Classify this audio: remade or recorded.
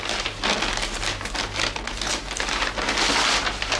recorded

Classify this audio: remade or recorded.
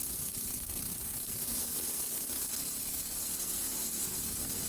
remade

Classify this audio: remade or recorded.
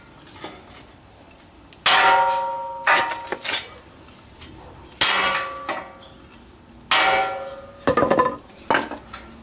recorded